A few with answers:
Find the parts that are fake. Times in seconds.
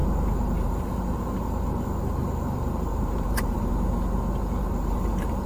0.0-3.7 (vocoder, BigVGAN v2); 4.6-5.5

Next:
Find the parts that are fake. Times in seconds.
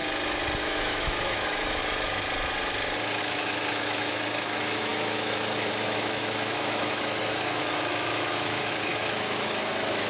0.6-1.8 (autoencoder, DAC-VAE); 3.2-10.1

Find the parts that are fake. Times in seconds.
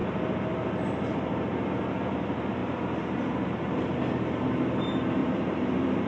2.6-4.4 (vocoder, BigVGAN v2); 5.2-6.1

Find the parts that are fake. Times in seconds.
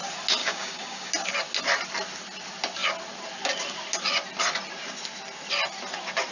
0.4-1.1 (codec, DAC)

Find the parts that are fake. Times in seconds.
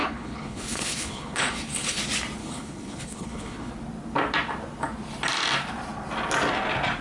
0.0-2.0 (codec, HILCodec); 2.4-3.7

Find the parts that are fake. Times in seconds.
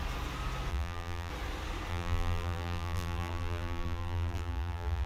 0.7-1.3 (vocoder, BigVGAN v2); 1.9-5.1